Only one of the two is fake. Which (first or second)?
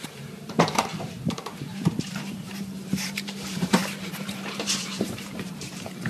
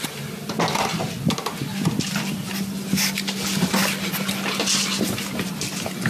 first